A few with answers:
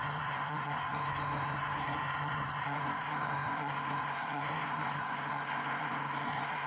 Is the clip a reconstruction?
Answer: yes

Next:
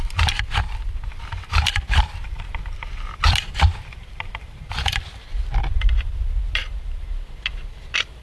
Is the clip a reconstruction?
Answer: no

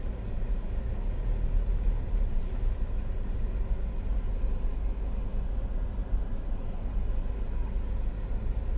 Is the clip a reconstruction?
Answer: no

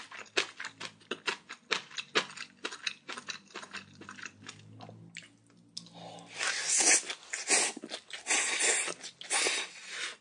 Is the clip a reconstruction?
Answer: no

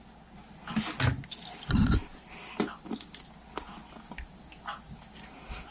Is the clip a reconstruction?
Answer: no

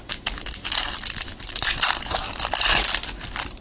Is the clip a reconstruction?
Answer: no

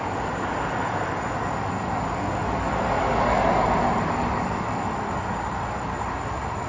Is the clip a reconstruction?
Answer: no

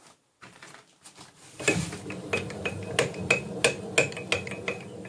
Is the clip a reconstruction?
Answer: no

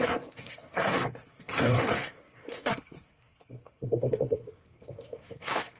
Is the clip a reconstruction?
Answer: yes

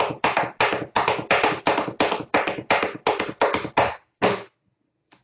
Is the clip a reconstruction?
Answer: no